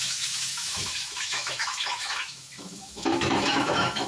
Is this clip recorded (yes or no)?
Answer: no